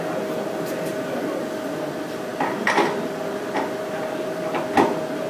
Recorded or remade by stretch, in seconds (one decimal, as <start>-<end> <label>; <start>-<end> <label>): 0.0-2.3 recorded; 2.3-3.8 remade; 3.8-5.3 recorded